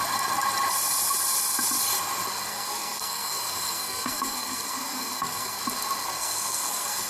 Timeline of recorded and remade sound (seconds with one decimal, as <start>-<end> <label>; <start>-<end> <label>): 0.0-2.5 recorded; 2.5-5.6 remade; 5.6-6.0 recorded; 6.0-7.1 remade